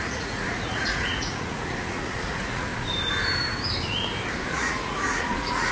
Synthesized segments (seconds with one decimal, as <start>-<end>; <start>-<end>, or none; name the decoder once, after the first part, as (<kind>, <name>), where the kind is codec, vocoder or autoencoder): 0.0-2.7 (vocoder, Vocos); 4.5-5.7